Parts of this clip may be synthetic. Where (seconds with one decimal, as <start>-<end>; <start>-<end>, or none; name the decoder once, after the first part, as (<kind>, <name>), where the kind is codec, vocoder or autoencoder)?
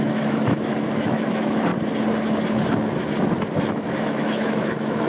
0.0-1.7 (autoencoder, DAC-VAE); 3.7-5.1